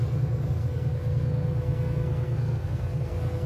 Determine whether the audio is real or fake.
fake